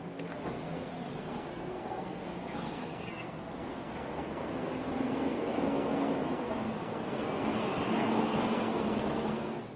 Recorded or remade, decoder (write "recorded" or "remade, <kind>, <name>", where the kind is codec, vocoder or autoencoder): remade, codec, SNAC